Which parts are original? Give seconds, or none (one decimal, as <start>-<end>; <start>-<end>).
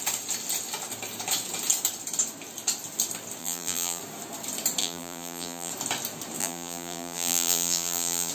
0.0-3.4; 4.0-4.8; 5.7-6.4